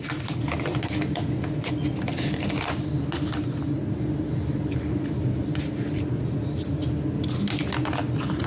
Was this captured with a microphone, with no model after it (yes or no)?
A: yes